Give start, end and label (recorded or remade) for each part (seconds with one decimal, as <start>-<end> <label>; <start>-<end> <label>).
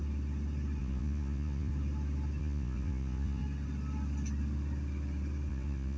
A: 0.0-0.8 recorded; 0.8-1.7 remade; 1.7-2.4 recorded; 2.4-3.4 remade; 3.4-5.5 recorded; 5.5-6.0 remade